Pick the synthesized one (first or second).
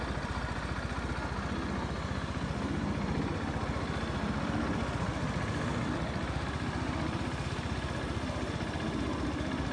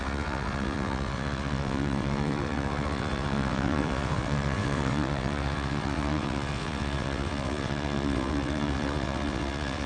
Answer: second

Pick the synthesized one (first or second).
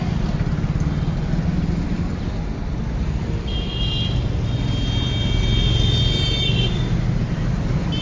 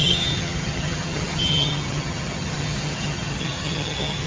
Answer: second